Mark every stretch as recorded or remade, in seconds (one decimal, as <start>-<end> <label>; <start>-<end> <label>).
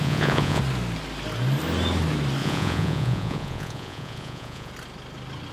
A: 0.0-0.6 remade; 0.6-2.4 recorded; 2.4-4.7 remade; 4.7-5.5 recorded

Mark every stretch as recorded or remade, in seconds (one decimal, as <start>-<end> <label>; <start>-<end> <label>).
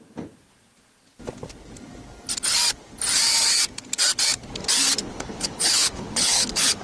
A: 0.0-5.0 recorded; 5.0-6.8 remade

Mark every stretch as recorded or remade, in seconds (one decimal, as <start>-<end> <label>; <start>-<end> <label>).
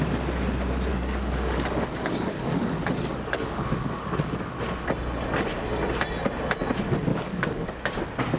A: 0.0-0.9 recorded; 0.9-4.5 remade; 4.5-7.1 recorded; 7.1-7.7 remade; 7.7-8.4 recorded